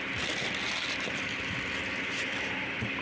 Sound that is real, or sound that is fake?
real